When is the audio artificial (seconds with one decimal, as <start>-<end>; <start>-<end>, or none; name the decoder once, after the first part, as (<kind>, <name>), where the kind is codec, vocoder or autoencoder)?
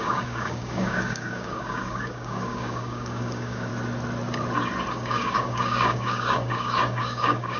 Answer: 0.0-3.7 (codec, DAC); 4.9-7.6